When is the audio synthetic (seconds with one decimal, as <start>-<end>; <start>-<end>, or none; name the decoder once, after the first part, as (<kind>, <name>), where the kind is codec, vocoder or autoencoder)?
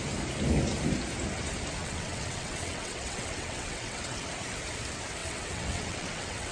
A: 1.8-4.3 (vocoder, WaveNeXt); 5.2-6.5